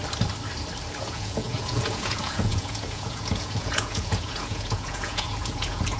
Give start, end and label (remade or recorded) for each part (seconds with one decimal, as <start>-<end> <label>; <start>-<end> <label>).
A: 0.0-1.0 recorded; 1.0-6.0 remade